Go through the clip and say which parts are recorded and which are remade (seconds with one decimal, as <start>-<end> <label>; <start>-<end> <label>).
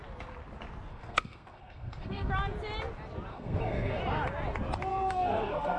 0.0-0.9 recorded; 0.9-2.3 remade; 2.3-3.3 recorded; 3.3-4.0 remade; 4.0-4.9 recorded; 4.9-5.8 remade